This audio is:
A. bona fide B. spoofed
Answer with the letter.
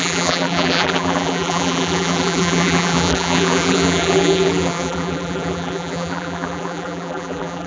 B